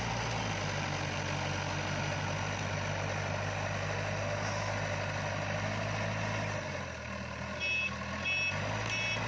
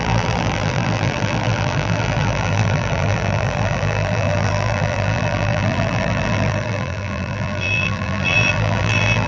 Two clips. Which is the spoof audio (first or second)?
second